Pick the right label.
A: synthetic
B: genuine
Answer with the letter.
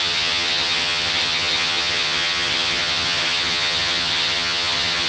A